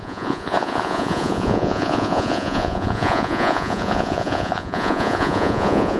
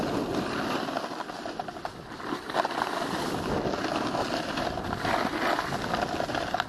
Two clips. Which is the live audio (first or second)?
second